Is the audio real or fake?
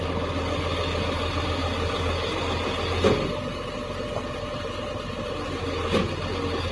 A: real